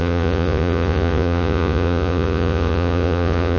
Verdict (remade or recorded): remade